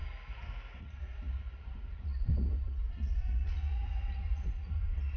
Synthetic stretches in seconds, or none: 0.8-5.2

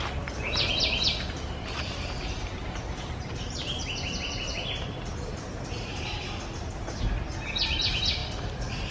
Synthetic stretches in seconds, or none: none

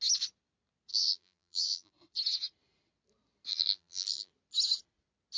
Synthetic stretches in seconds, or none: 0.9-1.9; 3.5-4.3

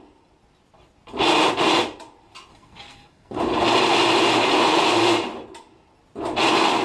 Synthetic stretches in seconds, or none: 2.5-3.4

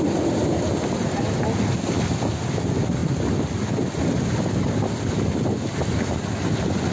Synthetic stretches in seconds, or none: none